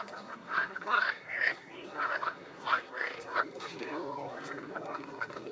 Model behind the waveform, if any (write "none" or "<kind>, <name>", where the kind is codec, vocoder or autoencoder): codec, SNAC